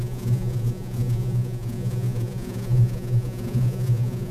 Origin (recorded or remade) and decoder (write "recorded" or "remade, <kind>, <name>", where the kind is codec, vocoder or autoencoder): remade, vocoder, Vocos